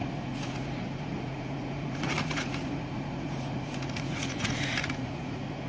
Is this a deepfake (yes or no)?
yes